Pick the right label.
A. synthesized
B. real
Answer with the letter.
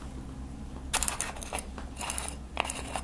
B